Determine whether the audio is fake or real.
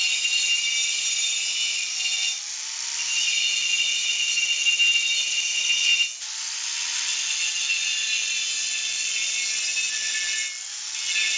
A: real